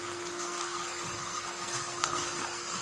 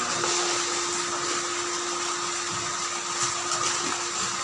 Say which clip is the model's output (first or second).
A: first